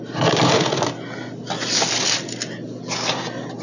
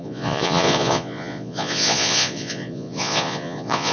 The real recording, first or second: first